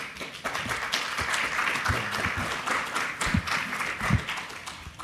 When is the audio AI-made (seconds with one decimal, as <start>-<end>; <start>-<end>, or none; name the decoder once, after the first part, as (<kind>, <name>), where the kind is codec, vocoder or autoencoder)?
none